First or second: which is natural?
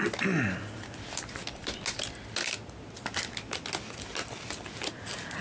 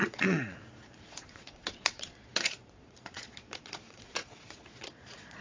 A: first